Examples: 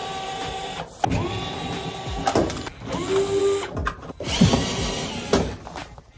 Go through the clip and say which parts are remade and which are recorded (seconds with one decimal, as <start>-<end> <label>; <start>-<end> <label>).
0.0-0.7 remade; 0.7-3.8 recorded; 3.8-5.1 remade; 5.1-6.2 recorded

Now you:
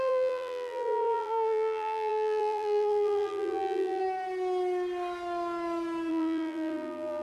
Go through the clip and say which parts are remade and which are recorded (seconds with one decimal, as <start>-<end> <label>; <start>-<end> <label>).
0.0-4.0 remade; 4.0-6.1 recorded; 6.1-7.2 remade

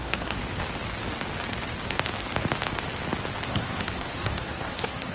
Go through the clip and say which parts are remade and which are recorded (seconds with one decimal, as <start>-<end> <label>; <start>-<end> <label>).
0.0-0.4 remade; 0.4-3.5 recorded; 3.5-5.1 remade